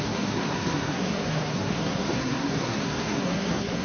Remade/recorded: remade